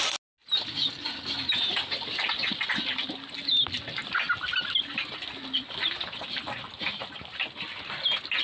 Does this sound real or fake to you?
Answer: real